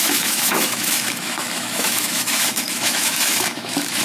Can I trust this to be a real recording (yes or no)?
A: no